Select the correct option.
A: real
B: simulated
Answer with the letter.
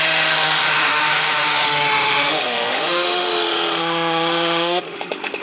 B